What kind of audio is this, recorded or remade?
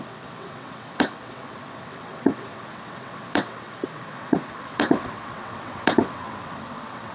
remade